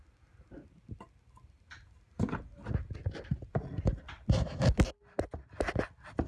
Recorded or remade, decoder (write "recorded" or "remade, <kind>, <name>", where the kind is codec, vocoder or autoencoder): recorded